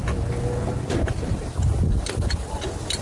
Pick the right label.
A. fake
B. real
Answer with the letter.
B